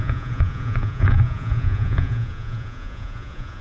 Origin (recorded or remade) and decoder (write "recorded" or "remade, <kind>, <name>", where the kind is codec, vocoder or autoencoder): remade, vocoder, Vocos